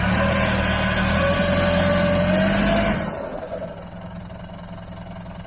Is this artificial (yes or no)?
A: no